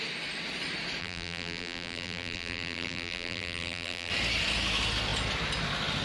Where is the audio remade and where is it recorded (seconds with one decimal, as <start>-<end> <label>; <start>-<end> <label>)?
0.0-1.0 recorded; 1.0-4.1 remade; 4.1-6.0 recorded